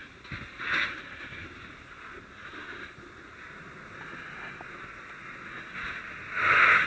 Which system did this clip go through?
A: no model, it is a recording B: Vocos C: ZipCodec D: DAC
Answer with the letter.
A